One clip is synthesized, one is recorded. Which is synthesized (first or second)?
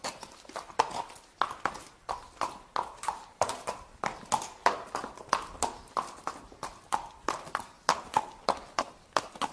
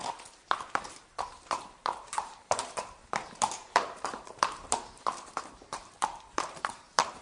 second